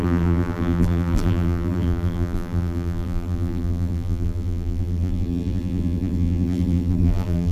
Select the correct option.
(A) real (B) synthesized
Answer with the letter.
B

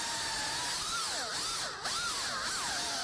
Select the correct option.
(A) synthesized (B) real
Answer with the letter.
B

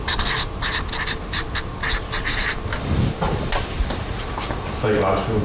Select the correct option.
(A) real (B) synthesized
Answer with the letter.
B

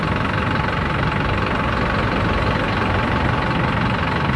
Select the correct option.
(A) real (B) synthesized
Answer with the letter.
A